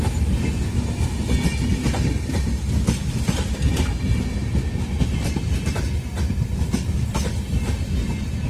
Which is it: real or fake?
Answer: real